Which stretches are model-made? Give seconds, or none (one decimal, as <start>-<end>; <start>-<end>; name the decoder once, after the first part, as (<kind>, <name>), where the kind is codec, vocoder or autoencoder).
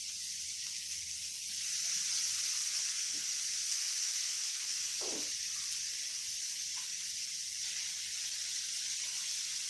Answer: 3.0-4.9 (autoencoder, DAC-VAE)